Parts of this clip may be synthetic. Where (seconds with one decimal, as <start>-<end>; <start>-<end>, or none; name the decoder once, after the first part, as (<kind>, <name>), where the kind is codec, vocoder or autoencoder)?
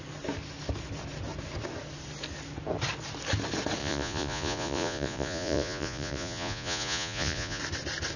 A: 3.8-7.6 (vocoder, Vocos)